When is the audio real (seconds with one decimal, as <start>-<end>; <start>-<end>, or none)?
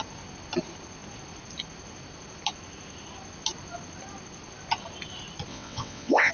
0.0-5.5